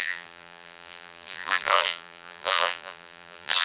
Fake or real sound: fake